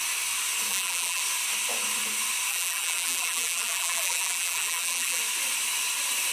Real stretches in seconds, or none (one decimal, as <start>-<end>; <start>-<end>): 0.0-0.7; 1.2-2.5; 5.2-6.3